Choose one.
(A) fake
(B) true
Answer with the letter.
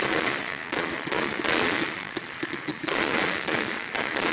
A